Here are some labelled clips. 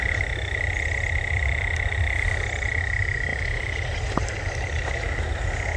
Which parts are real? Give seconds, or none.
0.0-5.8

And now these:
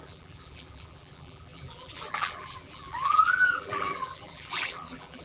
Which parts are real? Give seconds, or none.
none

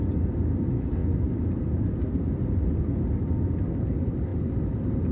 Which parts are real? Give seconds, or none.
0.0-5.1